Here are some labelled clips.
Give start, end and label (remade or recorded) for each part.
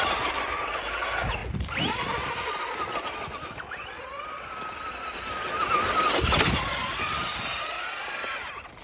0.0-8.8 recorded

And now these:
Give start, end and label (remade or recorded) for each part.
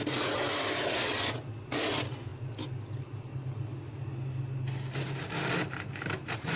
0.0-6.6 recorded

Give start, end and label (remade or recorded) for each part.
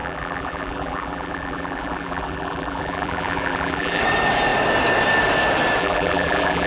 0.0-4.0 remade; 4.0-5.8 recorded; 5.8-6.7 remade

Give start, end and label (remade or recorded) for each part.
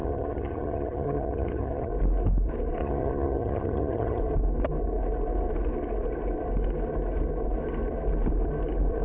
0.0-1.9 remade; 1.9-2.8 recorded; 2.8-4.2 remade; 4.2-9.0 recorded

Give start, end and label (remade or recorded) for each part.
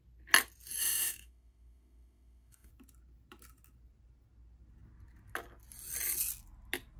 0.0-0.8 recorded; 0.8-2.7 remade; 2.7-7.0 recorded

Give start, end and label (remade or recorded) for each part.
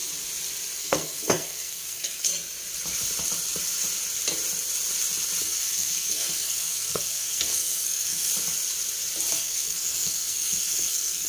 0.0-0.8 recorded; 0.8-2.3 remade; 2.3-5.4 recorded; 5.4-8.3 remade; 8.3-9.3 recorded; 9.3-11.3 remade